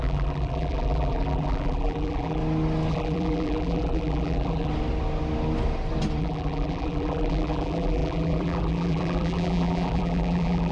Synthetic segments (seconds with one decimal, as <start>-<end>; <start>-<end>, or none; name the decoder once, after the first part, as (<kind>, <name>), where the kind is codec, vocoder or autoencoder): 0.0-2.4 (vocoder, BigVGAN v2); 2.9-4.7; 6.2-10.7

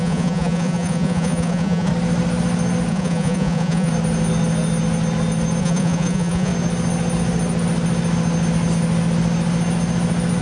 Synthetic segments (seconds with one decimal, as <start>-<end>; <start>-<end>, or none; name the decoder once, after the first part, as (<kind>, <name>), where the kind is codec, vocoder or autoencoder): 0.0-1.9 (vocoder, Vocos); 2.9-3.9; 5.6-6.5